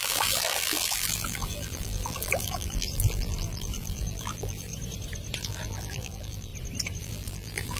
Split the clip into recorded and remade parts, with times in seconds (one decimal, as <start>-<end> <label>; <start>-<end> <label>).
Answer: 0.0-4.7 remade; 4.7-5.4 recorded; 5.4-6.5 remade; 6.5-7.0 recorded; 7.0-7.8 remade